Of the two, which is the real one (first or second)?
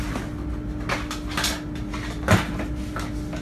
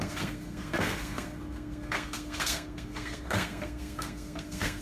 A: first